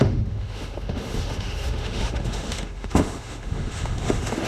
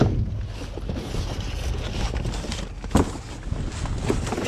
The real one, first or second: second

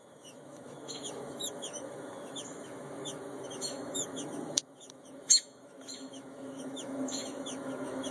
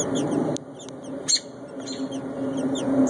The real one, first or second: second